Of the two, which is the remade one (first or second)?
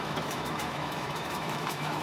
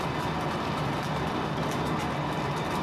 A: first